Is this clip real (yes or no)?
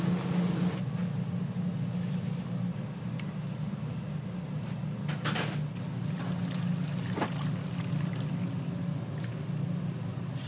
yes